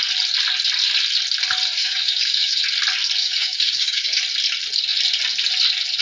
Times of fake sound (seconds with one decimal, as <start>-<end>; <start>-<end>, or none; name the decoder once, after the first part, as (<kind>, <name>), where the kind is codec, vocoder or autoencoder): 1.8-2.6 (codec, DAC); 3.2-4.2